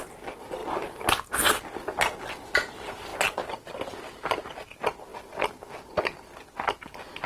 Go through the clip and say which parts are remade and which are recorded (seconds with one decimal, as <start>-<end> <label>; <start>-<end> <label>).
0.0-7.3 recorded